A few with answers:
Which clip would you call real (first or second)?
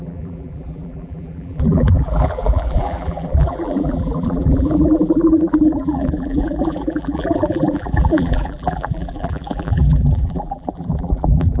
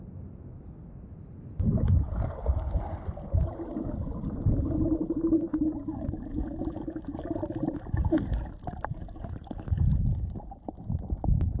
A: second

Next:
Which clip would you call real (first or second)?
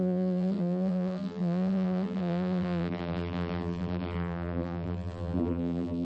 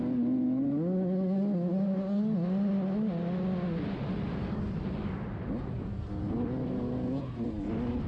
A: second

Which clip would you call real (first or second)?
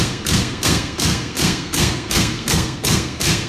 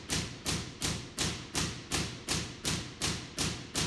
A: second